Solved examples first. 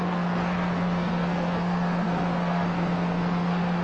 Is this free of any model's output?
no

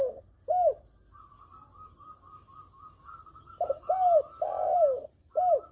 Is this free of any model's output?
yes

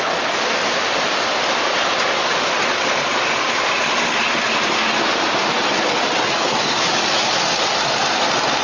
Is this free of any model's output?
yes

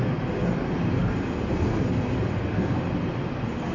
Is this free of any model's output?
yes